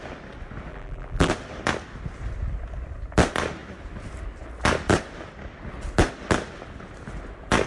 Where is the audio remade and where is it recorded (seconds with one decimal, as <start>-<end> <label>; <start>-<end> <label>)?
0.0-0.7 recorded; 0.7-1.3 remade; 1.3-7.7 recorded